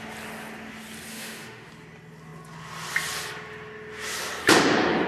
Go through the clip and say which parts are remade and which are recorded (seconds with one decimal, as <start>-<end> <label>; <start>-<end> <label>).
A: 0.0-1.1 recorded; 1.1-1.7 remade; 1.7-5.1 recorded